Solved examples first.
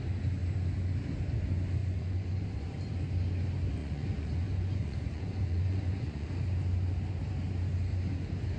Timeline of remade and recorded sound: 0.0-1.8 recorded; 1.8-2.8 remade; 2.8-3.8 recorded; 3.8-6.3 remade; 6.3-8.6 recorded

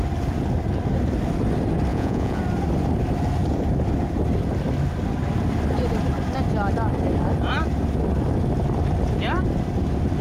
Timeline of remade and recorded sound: 0.0-1.9 recorded; 1.9-2.4 remade; 2.4-10.2 recorded

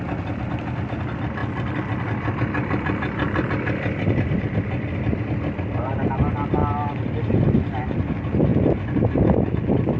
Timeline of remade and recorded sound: 0.0-10.0 recorded

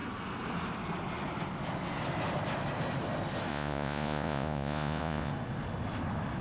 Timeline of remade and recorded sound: 0.0-3.5 recorded; 3.5-5.3 remade; 5.3-6.4 recorded

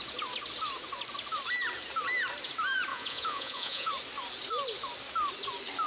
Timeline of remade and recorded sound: 0.0-2.9 recorded; 2.9-3.9 remade; 3.9-5.9 recorded

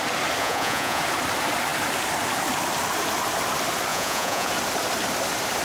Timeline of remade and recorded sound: 0.0-0.4 recorded; 0.4-1.0 remade; 1.0-3.9 recorded; 3.9-4.5 remade; 4.5-5.6 recorded

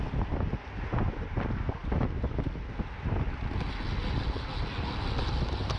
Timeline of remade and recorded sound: 0.0-5.8 recorded

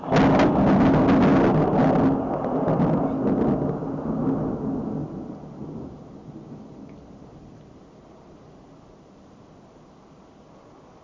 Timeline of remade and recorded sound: 0.0-11.0 recorded